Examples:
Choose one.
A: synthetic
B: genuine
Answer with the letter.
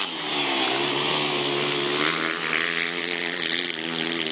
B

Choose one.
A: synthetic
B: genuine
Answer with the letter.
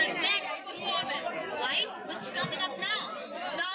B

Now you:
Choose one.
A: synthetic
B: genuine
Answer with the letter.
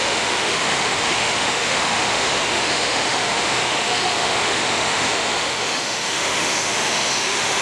A